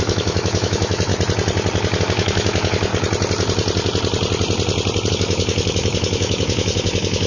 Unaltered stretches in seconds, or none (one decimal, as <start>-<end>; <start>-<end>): 1.1-2.0; 2.9-5.1